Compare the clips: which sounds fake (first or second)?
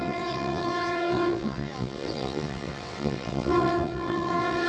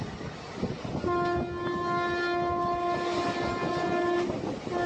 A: first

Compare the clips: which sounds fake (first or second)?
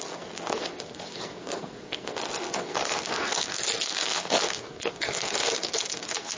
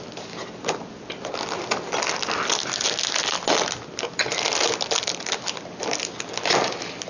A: first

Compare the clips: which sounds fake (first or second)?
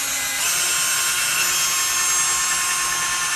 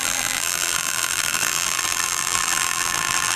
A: second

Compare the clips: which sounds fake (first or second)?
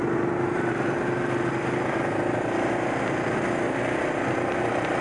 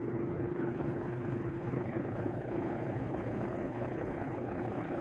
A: second